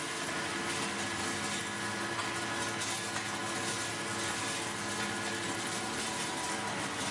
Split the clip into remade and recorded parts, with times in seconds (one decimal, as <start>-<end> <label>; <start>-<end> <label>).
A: 0.0-7.1 recorded